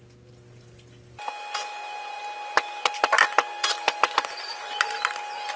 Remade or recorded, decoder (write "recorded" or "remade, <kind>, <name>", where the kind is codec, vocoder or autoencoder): recorded